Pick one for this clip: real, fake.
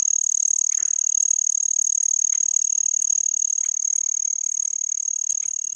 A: real